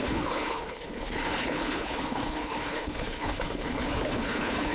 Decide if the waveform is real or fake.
fake